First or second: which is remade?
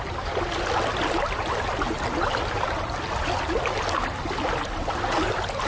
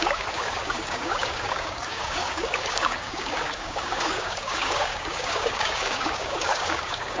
second